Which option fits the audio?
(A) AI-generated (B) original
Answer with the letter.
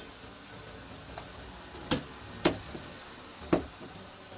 B